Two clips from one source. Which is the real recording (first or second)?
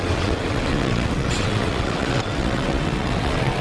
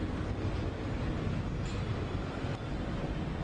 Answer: second